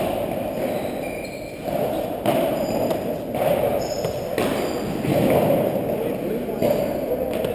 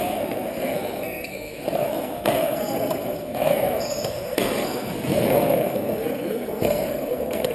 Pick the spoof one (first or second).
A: second